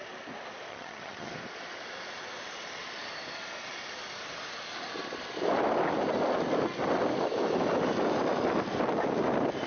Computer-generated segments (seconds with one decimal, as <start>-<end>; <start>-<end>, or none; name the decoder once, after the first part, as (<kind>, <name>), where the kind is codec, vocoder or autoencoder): 0.7-1.3 (vocoder, HiFi-GAN)